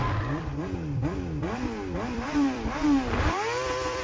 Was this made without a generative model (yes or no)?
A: no